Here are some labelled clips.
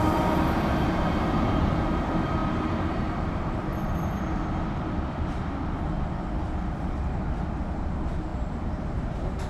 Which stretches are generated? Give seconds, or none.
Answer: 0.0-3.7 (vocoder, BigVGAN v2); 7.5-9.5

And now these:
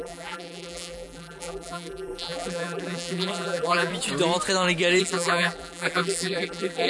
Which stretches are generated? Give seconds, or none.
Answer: 0.0-3.9 (vocoder, BigVGAN v2); 5.0-6.9

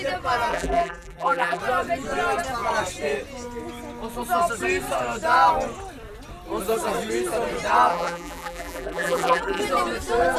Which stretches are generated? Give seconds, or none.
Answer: 0.5-1.6 (vocoder, BigVGAN v2); 7.9-9.6

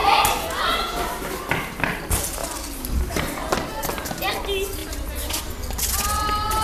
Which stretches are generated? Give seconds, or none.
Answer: 0.0-2.0 (vocoder, BigVGAN v2)

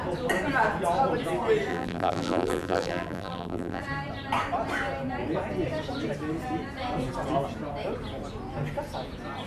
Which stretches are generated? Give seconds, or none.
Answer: 1.7-3.8 (vocoder, BigVGAN v2)

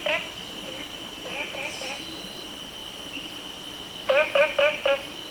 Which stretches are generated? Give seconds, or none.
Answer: none

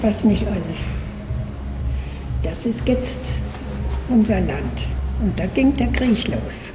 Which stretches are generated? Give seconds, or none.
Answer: none

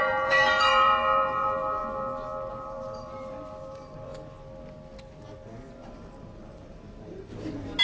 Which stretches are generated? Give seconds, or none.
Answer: 0.0-1.8 (vocoder, BigVGAN v2); 2.5-4.1; 5.8-7.3